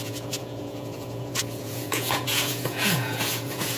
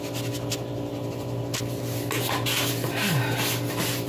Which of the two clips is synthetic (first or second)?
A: first